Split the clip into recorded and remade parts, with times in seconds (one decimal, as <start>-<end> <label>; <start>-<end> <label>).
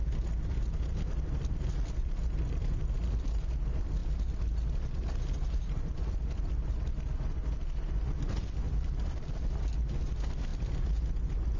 0.0-11.6 recorded